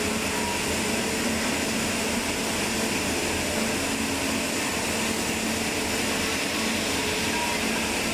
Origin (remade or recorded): recorded